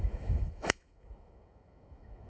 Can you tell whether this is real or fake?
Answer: fake